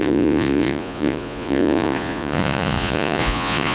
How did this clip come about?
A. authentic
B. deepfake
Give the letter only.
B